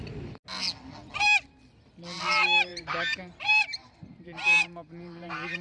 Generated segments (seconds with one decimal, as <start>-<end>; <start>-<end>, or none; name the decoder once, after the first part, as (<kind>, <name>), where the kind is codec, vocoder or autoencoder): 2.7-5.6 (vocoder, BigVGAN v2)